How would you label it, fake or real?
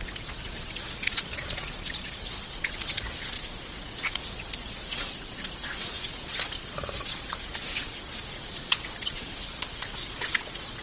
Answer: fake